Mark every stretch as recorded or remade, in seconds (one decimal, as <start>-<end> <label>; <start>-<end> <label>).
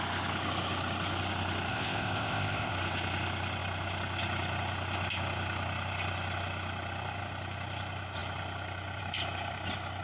0.0-1.7 recorded; 1.7-2.7 remade; 2.7-10.0 recorded